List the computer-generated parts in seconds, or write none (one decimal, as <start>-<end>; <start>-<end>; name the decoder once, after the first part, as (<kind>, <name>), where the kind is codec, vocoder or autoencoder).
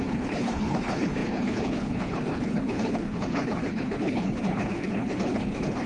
0.0-5.9 (codec, HILCodec)